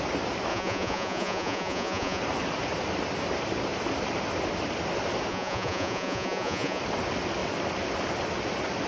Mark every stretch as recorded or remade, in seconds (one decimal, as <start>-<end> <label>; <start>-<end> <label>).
0.0-0.5 recorded; 0.5-2.2 remade; 2.2-5.3 recorded; 5.3-6.8 remade; 6.8-8.9 recorded